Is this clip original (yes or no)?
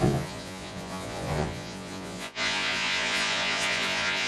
no